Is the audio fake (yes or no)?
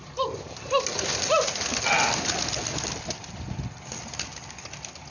no